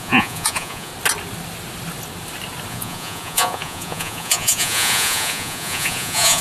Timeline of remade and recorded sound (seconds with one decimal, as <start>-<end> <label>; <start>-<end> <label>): 0.0-0.9 remade; 0.9-2.7 recorded; 2.7-6.4 remade